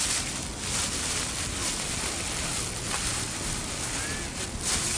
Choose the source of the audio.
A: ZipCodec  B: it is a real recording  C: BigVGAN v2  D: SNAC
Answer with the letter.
B